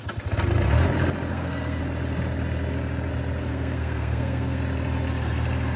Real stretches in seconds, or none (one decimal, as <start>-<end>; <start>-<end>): 0.0-1.3; 1.8-3.5; 4.6-5.8